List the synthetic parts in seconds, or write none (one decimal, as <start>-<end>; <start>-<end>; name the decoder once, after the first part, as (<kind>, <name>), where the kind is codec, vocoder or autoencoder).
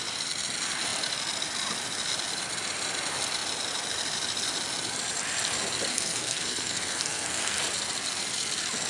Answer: 5.9-7.6 (codec, SNAC)